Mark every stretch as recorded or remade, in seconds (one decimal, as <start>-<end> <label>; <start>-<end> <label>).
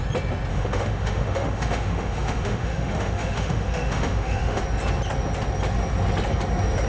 0.0-0.5 recorded; 0.5-4.6 remade; 4.6-6.9 recorded